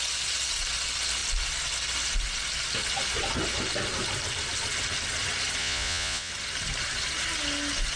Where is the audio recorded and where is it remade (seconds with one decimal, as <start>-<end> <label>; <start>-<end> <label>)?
0.0-5.6 recorded; 5.6-6.3 remade; 6.3-8.0 recorded